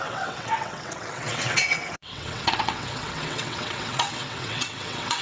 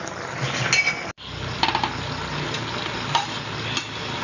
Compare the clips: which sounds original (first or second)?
second